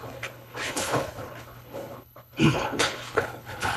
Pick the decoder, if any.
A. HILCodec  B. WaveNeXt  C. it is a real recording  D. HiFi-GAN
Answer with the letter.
A